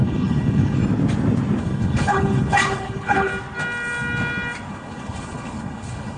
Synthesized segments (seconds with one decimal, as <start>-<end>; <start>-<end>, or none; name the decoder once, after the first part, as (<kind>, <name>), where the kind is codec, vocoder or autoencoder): 0.0-0.8 (codec, HILCodec); 1.6-3.3; 4.7-6.2